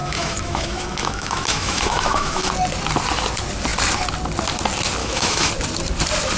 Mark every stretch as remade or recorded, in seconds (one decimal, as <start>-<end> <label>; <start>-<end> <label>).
0.0-2.5 remade; 2.5-5.0 recorded; 5.0-5.5 remade; 5.5-6.4 recorded